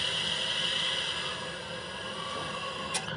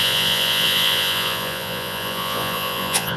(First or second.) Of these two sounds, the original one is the first